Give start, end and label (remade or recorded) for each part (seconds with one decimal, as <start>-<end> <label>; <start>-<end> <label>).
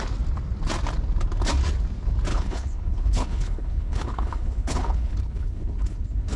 0.0-2.3 recorded; 2.3-6.4 remade